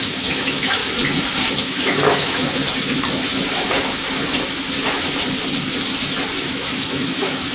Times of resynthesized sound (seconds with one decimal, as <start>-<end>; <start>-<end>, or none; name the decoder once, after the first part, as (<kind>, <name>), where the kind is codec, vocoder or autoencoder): 0.0-0.8 (autoencoder, DAC-VAE); 1.5-2.6; 6.4-7.5